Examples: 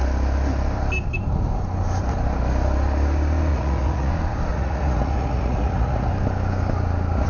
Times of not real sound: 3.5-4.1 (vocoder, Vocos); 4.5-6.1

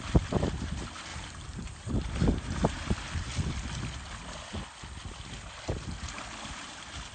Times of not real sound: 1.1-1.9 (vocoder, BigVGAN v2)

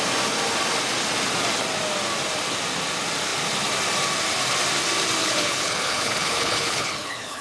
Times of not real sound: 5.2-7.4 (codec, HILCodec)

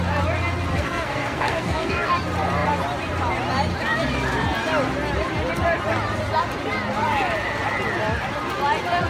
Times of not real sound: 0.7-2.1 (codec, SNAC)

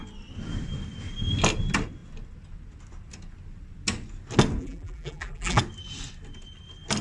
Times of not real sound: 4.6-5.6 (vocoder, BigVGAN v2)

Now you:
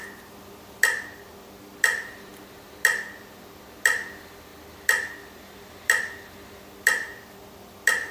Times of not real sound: none